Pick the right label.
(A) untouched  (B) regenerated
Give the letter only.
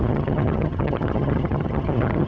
B